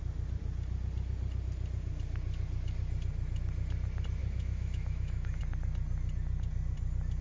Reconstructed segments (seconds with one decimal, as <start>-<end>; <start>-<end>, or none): 4.2-5.4